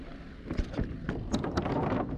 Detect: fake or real real